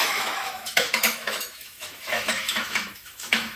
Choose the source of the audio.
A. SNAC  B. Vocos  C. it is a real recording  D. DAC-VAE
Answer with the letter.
D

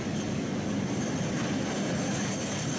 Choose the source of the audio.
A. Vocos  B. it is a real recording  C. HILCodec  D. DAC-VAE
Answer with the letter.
B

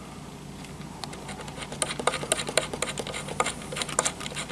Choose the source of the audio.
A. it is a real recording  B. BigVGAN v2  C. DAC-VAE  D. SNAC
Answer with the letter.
A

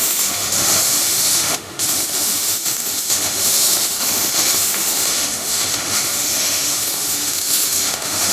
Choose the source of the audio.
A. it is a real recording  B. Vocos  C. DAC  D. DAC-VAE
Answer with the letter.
D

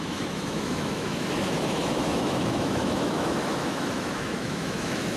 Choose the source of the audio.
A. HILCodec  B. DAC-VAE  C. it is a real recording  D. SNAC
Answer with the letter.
B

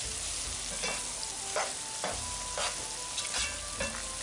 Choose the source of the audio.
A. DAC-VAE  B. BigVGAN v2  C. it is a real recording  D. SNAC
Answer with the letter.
C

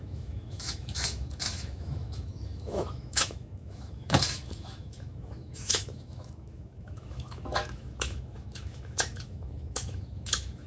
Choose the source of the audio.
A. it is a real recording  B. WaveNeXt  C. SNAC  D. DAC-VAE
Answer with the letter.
D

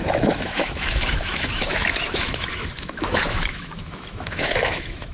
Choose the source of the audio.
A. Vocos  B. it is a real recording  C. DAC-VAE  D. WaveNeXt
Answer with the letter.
C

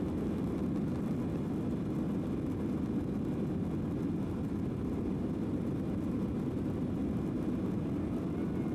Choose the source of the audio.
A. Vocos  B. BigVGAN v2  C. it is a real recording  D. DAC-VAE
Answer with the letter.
C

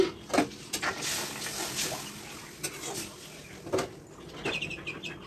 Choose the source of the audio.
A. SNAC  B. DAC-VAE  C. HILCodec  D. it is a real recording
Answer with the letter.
D